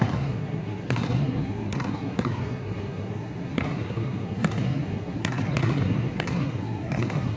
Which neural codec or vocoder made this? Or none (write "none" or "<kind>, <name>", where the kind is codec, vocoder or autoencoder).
codec, SNAC